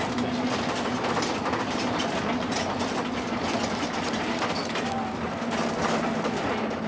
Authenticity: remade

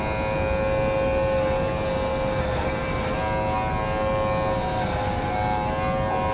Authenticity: recorded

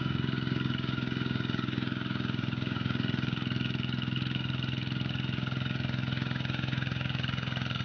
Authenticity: remade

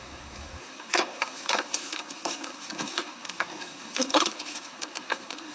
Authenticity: remade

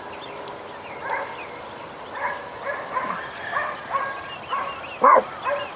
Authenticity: recorded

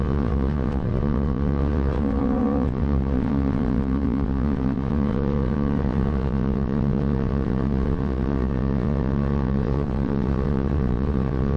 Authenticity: remade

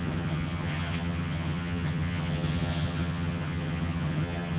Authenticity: remade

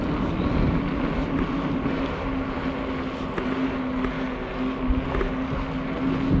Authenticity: recorded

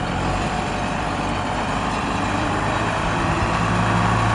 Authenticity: remade